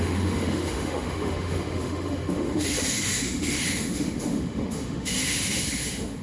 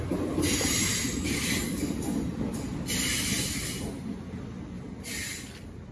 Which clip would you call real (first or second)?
second